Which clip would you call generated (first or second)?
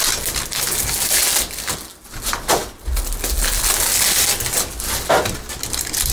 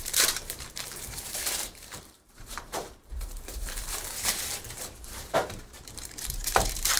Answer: second